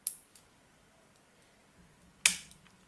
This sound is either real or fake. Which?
real